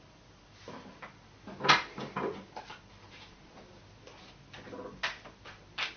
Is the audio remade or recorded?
recorded